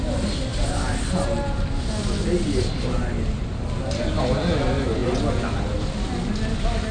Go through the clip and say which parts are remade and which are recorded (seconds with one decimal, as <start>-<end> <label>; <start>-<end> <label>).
0.0-6.9 recorded